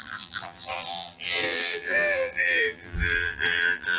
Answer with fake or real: fake